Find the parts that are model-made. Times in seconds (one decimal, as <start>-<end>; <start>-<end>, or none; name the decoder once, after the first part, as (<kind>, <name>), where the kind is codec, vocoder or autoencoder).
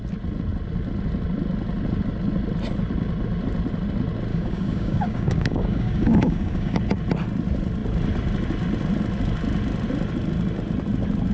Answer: 4.3-6.8 (codec, DAC)